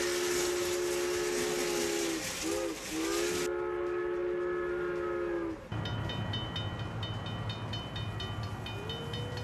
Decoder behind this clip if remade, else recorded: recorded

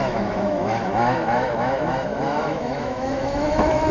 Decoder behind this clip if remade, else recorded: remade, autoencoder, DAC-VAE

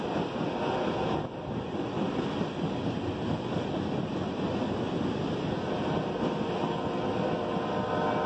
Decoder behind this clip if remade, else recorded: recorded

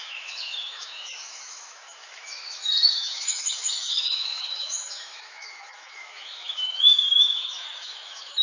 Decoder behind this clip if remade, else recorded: remade, autoencoder, DAC-VAE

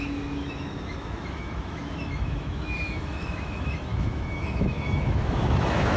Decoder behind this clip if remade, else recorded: remade, autoencoder, DAC-VAE